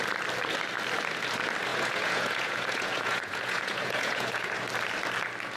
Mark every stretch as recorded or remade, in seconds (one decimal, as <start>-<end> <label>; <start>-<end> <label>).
0.0-1.7 recorded; 1.7-4.5 remade; 4.5-5.6 recorded